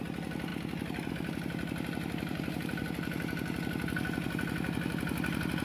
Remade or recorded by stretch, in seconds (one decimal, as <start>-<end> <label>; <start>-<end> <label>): 0.0-5.6 recorded